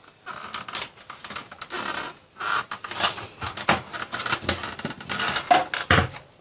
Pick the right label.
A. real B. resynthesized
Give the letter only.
A